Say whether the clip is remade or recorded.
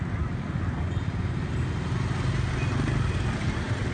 recorded